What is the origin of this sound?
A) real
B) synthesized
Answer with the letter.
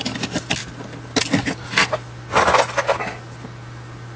A